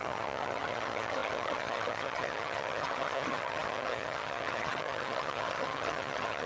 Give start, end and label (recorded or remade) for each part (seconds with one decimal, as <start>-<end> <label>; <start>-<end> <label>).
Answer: 0.0-6.5 remade